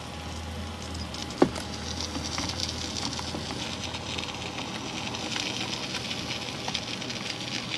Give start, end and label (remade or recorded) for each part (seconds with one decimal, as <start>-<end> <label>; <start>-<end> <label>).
0.0-1.2 recorded; 1.2-1.7 remade; 1.7-7.8 recorded